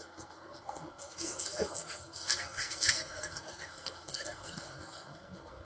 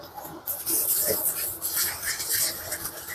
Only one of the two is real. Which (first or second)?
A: second